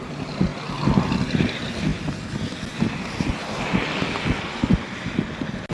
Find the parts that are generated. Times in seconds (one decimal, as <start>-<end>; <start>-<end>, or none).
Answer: none